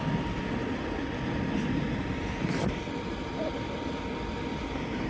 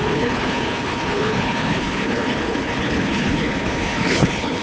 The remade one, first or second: second